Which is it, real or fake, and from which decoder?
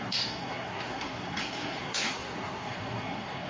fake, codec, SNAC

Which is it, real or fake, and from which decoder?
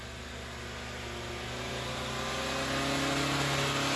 real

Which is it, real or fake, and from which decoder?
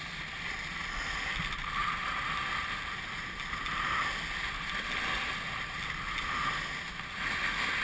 real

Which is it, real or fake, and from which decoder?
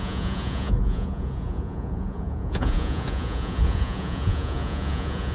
fake, vocoder, Vocos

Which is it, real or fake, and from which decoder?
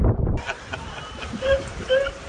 fake, vocoder, BigVGAN v2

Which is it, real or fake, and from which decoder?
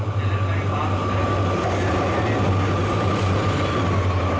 real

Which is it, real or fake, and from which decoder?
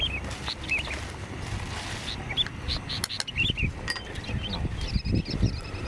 real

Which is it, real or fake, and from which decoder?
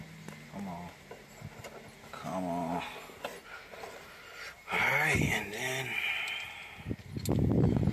real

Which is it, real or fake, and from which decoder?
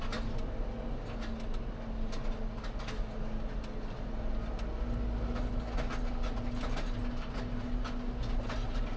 real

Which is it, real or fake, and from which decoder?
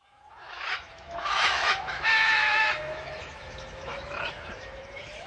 fake, autoencoder, DAC-VAE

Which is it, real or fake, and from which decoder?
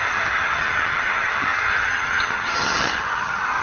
fake, vocoder, HiFi-GAN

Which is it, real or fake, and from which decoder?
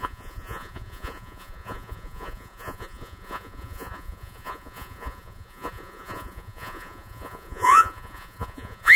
fake, vocoder, Vocos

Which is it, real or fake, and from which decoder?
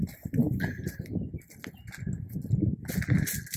real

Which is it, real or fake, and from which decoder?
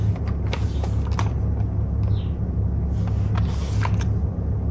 real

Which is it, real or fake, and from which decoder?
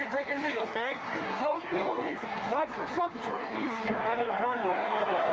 fake, codec, SNAC